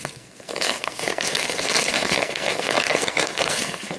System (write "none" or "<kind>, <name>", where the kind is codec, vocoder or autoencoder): codec, SNAC